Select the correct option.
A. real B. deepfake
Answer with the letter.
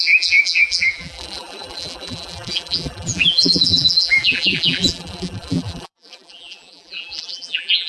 B